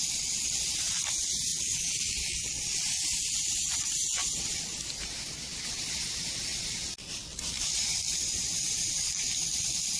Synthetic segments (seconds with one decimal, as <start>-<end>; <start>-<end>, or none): none